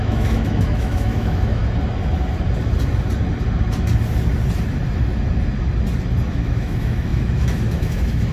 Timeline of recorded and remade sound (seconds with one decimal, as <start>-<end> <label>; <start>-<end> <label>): 0.0-1.6 remade; 1.6-6.3 recorded; 6.3-8.3 remade